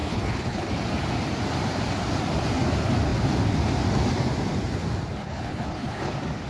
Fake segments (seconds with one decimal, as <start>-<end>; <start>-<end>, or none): 0.0-0.7; 5.2-6.1